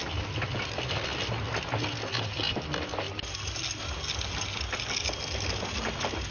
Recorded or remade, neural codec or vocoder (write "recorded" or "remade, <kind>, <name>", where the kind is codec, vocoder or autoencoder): recorded